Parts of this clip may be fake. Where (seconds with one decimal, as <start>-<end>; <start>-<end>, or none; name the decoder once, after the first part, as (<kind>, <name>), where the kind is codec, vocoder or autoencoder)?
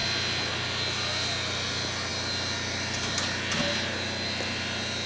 none